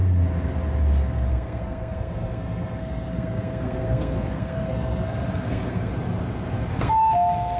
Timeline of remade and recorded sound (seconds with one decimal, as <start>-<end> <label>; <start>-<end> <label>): 0.0-1.3 recorded; 1.3-5.9 remade; 5.9-6.7 recorded; 6.7-7.6 remade